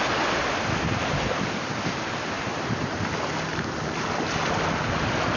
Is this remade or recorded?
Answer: recorded